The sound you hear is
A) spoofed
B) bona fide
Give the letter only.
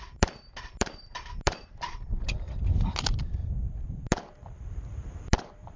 A